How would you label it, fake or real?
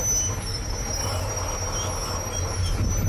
real